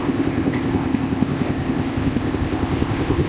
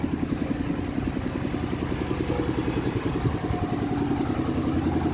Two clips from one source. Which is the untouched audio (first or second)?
second